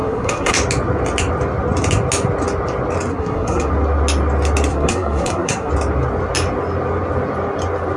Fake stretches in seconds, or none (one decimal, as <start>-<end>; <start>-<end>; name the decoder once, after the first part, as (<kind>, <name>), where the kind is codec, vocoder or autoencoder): 0.0-0.5 (codec, SNAC); 3.1-3.7; 4.7-5.7